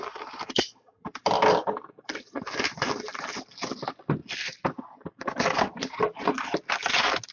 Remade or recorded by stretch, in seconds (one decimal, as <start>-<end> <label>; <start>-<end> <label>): 0.0-7.3 recorded